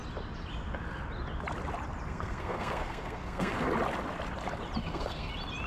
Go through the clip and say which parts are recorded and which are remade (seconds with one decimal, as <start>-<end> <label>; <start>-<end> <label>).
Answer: 0.0-2.1 recorded; 2.1-3.7 remade; 3.7-4.8 recorded; 4.8-5.3 remade; 5.3-5.7 recorded